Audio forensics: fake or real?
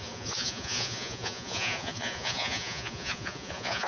fake